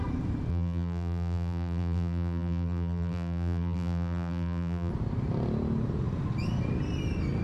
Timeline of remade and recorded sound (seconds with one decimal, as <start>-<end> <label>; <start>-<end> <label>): 0.0-0.5 recorded; 0.5-4.9 remade; 4.9-7.4 recorded

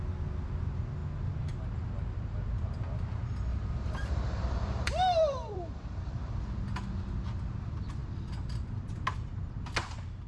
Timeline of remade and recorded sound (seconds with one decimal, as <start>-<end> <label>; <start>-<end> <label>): 0.0-3.5 recorded; 3.5-6.3 remade; 6.3-10.3 recorded